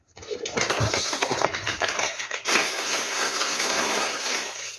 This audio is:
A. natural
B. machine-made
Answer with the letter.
B